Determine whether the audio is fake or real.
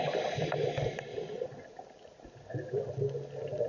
real